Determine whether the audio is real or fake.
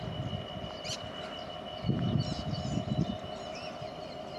real